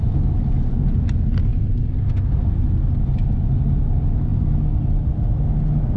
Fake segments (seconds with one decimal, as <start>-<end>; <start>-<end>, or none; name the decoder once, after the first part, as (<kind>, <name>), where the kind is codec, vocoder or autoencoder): none